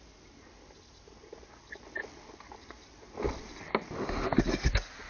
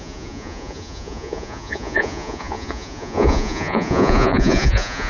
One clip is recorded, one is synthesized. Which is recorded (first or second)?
first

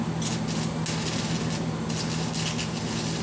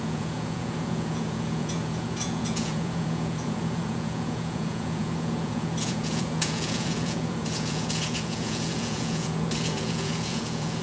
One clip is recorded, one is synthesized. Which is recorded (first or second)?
first